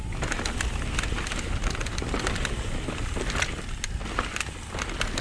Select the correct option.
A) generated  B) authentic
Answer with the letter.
B